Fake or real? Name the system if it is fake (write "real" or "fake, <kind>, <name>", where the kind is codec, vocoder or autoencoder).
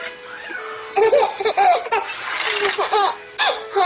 real